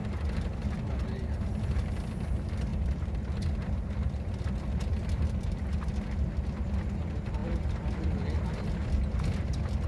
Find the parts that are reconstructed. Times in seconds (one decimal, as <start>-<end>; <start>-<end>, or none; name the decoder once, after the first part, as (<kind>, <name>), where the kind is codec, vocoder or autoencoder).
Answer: 2.7-5.9 (vocoder, BigVGAN v2); 7.4-8.2